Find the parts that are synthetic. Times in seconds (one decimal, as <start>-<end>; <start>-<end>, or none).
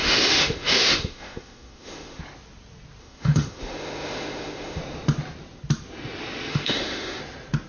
0.0-2.2; 3.0-4.8; 6.5-7.2